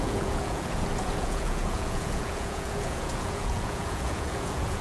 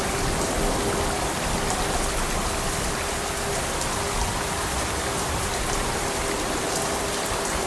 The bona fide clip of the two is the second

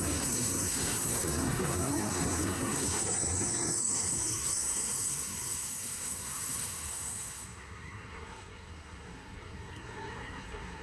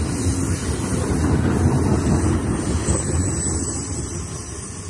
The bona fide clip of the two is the second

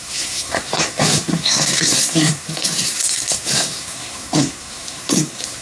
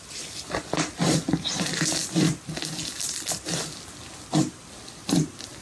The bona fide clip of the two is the second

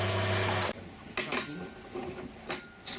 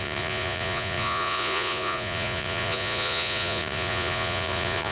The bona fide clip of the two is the first